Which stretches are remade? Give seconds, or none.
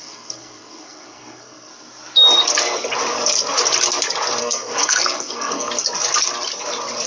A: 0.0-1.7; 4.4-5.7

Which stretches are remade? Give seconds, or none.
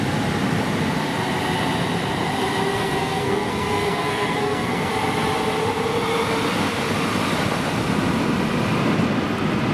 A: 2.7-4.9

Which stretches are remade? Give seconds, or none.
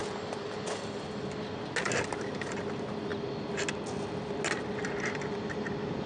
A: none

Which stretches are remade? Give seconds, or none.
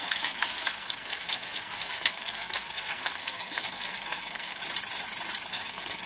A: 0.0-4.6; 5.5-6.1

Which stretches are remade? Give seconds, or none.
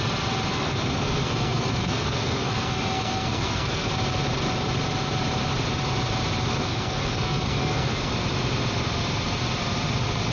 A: 0.5-3.9; 6.5-8.1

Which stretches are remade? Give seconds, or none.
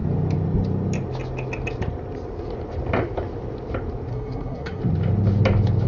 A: 4.1-4.8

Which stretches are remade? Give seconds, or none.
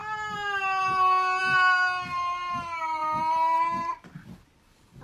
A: none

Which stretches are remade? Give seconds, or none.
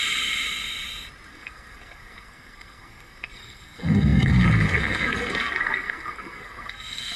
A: 1.3-7.2